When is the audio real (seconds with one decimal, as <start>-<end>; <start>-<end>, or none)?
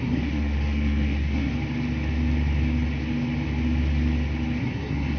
1.5-4.6